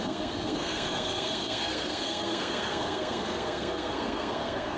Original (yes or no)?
no